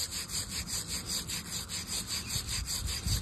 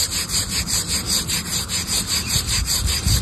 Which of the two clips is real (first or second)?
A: first